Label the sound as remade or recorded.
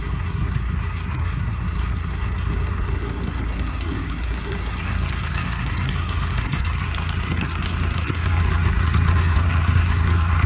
remade